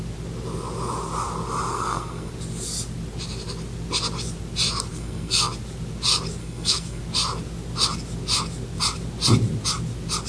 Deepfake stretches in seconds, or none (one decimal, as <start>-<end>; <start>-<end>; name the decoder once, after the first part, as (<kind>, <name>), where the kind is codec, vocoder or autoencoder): 1.7-2.3 (codec, SNAC); 4.9-5.5; 6.4-7.0